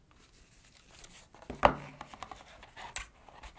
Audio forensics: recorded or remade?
recorded